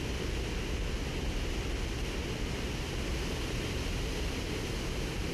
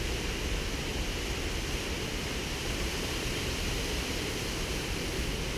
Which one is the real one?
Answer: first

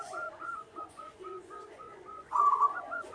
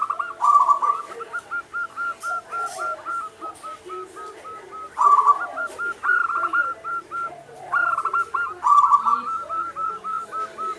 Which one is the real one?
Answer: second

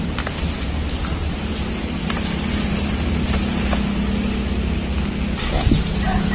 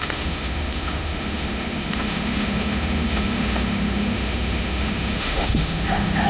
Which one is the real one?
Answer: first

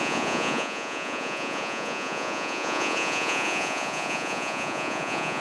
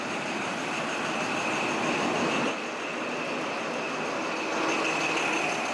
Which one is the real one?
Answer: second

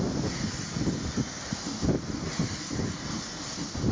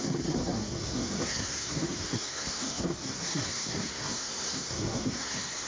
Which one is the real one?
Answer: first